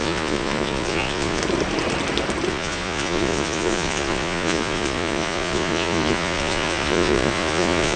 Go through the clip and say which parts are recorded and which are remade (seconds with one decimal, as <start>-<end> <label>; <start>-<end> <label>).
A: 0.0-1.4 remade; 1.4-2.5 recorded; 2.5-8.0 remade